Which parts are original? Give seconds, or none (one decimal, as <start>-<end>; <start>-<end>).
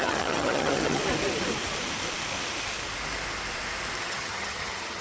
1.0-4.0